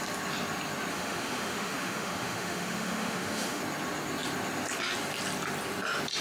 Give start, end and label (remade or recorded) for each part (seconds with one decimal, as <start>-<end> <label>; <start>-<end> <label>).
0.0-0.9 recorded; 0.9-3.6 remade; 3.6-6.2 recorded